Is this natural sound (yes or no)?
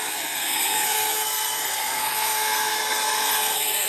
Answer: no